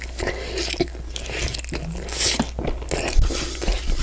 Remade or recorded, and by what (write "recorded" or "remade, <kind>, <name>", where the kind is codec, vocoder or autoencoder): recorded